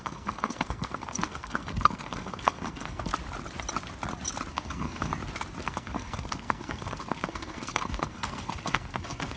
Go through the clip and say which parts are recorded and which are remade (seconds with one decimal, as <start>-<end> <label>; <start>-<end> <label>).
0.0-3.1 remade; 3.1-4.5 recorded; 4.5-5.1 remade; 5.1-5.6 recorded; 5.6-9.4 remade